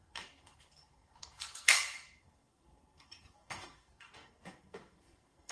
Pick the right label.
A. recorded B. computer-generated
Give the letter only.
B